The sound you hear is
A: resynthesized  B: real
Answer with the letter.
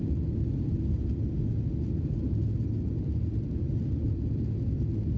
B